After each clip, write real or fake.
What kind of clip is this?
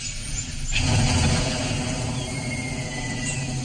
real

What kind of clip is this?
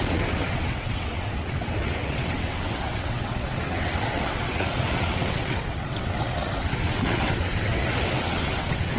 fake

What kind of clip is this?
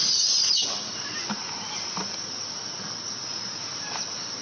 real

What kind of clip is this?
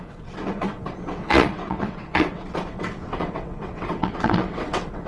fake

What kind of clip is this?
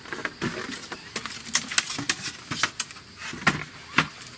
real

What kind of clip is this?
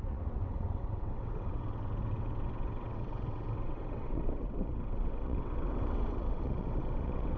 fake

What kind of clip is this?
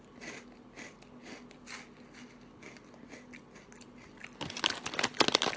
real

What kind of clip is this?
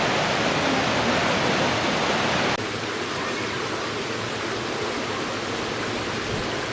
real